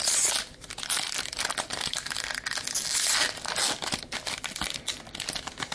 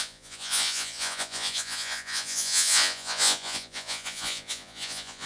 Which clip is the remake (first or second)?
second